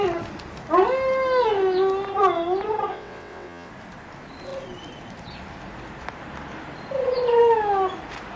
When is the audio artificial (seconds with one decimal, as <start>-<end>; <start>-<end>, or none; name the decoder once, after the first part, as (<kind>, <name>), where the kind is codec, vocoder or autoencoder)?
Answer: 2.9-3.7 (vocoder, WaveNeXt)